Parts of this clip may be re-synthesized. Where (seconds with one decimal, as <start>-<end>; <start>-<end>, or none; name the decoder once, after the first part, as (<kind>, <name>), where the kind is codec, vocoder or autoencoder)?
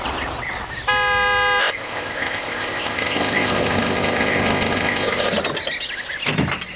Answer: 1.6-5.3 (codec, ZipCodec)